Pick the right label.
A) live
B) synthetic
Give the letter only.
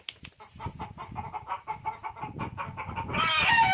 A